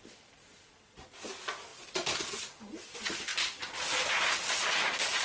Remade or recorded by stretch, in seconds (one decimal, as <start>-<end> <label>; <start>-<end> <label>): 0.0-5.2 recorded